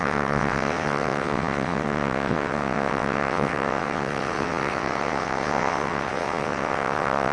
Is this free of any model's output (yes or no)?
no